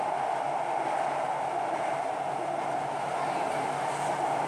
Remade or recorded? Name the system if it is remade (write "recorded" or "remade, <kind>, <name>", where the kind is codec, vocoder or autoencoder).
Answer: recorded